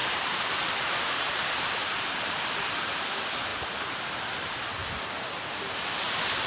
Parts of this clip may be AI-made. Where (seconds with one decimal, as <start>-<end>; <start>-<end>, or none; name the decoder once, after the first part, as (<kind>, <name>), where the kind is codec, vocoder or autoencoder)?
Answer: 0.0-3.0 (vocoder, BigVGAN v2); 3.5-4.0